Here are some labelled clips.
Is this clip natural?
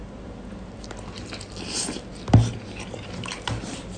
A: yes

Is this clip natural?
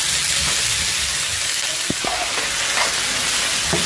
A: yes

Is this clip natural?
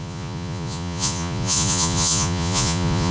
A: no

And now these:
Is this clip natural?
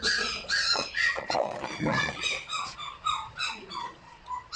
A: no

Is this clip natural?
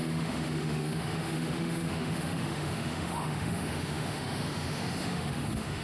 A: no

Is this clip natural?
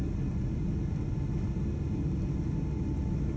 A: yes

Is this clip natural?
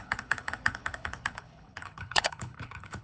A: no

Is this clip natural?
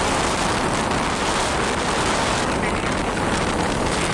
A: yes